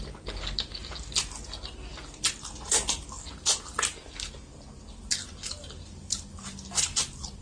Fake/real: real